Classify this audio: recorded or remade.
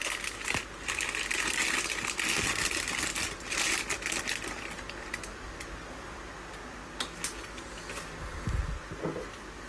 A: recorded